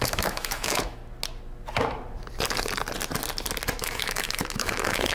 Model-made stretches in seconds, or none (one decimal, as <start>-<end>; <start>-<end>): 0.0-1.0; 3.8-5.1